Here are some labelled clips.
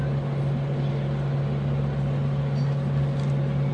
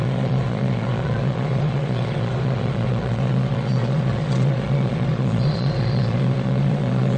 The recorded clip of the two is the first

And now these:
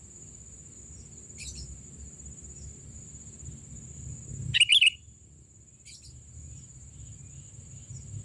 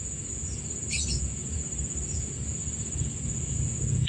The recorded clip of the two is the first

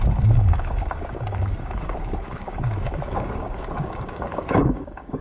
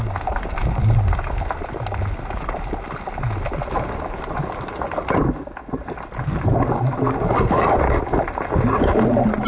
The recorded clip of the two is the second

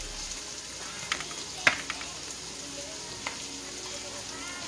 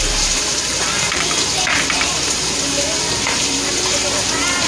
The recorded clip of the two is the first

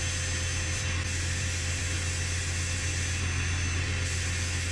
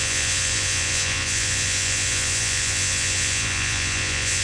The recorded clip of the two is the first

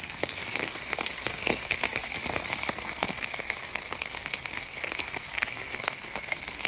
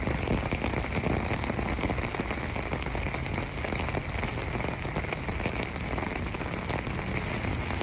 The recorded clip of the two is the second